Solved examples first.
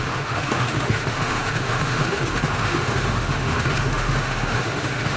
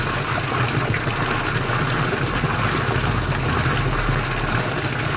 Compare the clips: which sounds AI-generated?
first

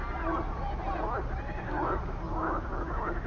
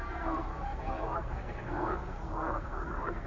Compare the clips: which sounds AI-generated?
second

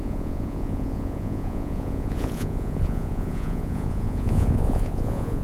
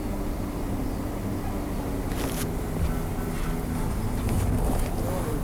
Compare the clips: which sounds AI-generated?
first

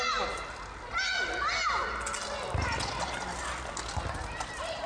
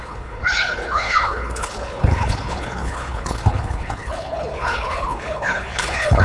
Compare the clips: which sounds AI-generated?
second